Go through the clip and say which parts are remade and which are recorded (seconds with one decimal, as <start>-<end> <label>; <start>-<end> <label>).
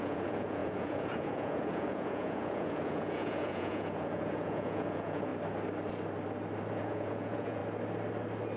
0.0-5.3 remade; 5.3-6.7 recorded; 6.7-7.6 remade; 7.6-8.6 recorded